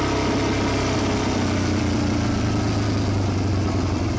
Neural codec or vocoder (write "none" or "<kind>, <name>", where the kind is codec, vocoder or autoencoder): none